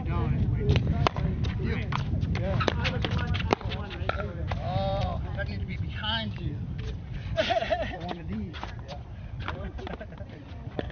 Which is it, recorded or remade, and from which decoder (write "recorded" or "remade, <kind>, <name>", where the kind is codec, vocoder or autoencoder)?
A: remade, vocoder, BigVGAN v2